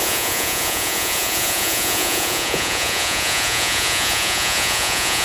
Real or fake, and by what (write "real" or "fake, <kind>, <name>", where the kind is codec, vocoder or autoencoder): fake, vocoder, Vocos